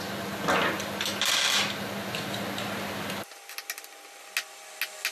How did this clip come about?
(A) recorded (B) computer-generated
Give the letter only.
A